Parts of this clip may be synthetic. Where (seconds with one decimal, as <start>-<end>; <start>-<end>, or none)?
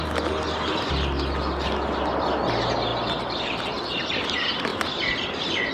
none